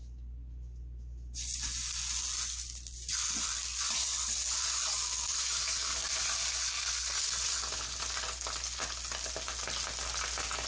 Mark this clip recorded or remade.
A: recorded